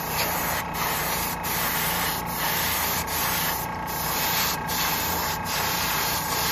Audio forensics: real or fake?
real